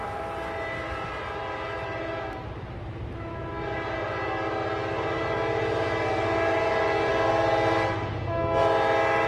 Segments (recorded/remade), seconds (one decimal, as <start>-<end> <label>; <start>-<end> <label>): 0.0-9.3 recorded